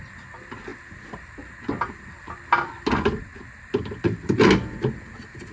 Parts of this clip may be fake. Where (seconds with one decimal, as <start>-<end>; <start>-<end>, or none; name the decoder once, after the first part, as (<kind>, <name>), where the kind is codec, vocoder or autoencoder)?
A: none

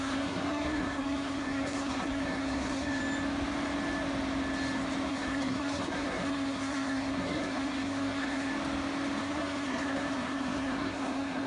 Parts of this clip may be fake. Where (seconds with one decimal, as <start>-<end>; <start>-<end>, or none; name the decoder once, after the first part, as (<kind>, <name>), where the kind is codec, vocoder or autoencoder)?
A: 0.0-3.0 (codec, SNAC); 5.1-8.5; 9.2-11.5